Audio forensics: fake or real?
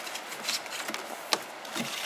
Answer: real